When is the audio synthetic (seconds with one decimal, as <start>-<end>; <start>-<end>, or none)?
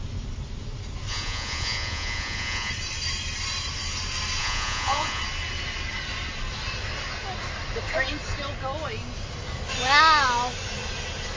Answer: 1.1-2.7; 4.4-5.2